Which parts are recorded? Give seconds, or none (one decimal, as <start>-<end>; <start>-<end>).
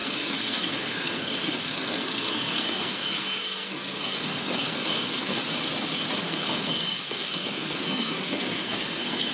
5.4-6.2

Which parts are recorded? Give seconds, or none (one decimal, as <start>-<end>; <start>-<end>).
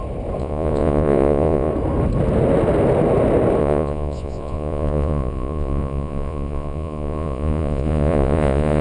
0.0-0.4; 1.7-3.6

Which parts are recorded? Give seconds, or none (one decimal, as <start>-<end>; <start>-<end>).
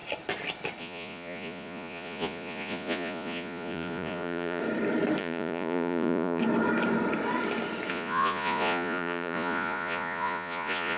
0.0-0.8; 4.6-5.2; 6.4-7.9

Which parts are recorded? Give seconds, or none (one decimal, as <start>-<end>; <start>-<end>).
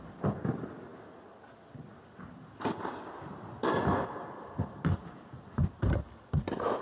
0.0-6.8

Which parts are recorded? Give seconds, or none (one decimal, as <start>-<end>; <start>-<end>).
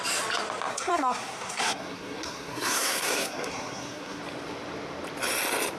0.0-0.7; 4.2-5.8